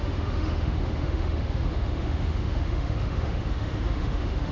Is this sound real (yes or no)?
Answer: no